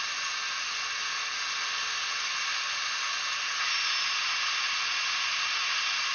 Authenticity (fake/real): real